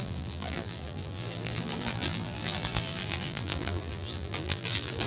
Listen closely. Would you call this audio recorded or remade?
remade